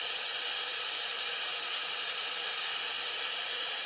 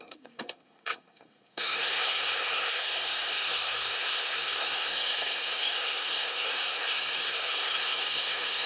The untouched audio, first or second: first